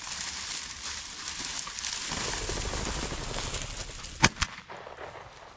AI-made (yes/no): no